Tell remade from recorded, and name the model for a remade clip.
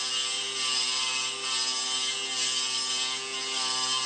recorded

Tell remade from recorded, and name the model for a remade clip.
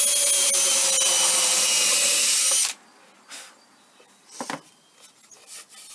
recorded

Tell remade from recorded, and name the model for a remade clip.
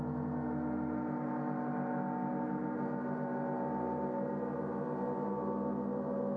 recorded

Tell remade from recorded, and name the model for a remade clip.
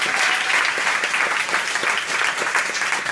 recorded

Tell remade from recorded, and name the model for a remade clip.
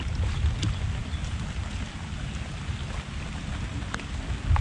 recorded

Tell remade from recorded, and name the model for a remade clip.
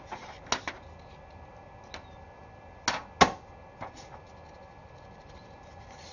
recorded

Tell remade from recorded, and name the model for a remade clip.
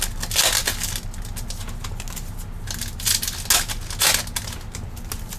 recorded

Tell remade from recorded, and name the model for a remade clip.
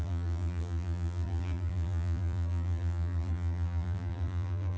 remade, vocoder, BigVGAN v2